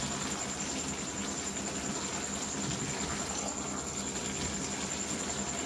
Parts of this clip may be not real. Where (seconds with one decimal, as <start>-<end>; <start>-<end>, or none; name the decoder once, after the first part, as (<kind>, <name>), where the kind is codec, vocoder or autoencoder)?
none